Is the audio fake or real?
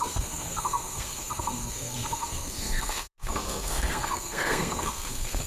fake